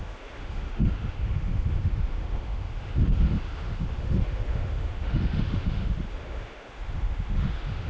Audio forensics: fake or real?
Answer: fake